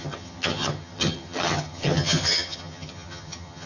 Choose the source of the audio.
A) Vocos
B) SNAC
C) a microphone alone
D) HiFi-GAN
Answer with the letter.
D